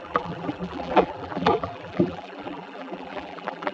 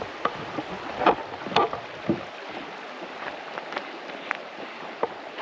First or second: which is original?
second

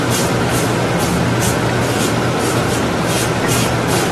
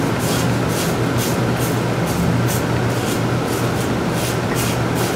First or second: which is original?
second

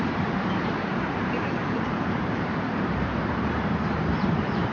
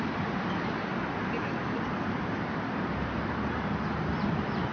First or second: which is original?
second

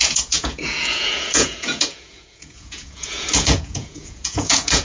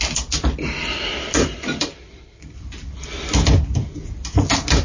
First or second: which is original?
second